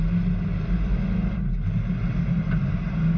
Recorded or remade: recorded